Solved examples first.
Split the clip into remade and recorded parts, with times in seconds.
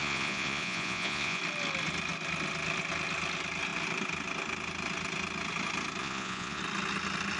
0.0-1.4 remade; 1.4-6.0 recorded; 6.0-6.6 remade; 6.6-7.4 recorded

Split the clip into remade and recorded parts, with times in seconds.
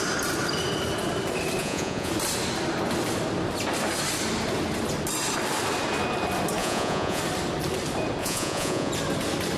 0.0-1.6 recorded; 1.6-2.1 remade; 2.1-6.6 recorded; 6.6-7.2 remade; 7.2-8.2 recorded; 8.2-8.9 remade; 8.9-9.6 recorded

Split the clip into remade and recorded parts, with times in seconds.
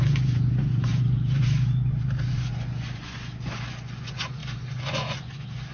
0.0-5.7 remade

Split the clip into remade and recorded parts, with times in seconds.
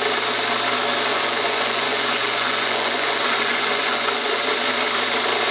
0.0-1.1 recorded; 1.1-4.4 remade; 4.4-5.5 recorded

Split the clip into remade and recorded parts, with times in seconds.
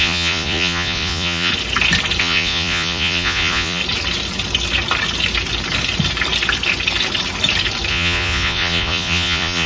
0.0-1.5 remade; 1.5-2.2 recorded; 2.2-3.8 remade; 3.8-7.9 recorded; 7.9-9.7 remade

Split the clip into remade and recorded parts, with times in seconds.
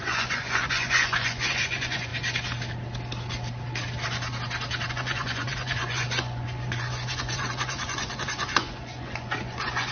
0.0-2.1 remade; 2.1-4.9 recorded; 4.9-9.9 remade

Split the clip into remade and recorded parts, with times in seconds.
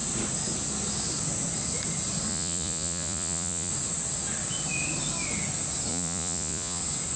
0.0-2.3 recorded; 2.3-3.7 remade; 3.7-5.9 recorded; 5.9-6.8 remade; 6.8-7.2 recorded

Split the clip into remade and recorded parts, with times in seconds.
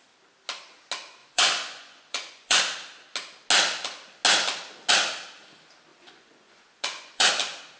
0.0-1.2 recorded; 1.2-2.6 remade; 2.6-5.9 recorded; 5.9-7.3 remade; 7.3-7.8 recorded